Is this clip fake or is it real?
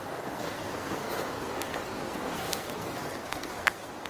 fake